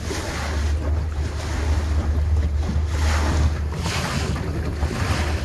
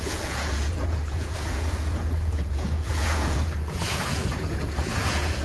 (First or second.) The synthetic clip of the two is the second